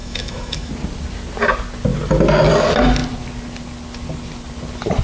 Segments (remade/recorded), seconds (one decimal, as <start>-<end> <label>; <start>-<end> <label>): 0.0-0.7 remade; 0.7-5.0 recorded